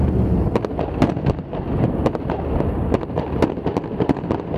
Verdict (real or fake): real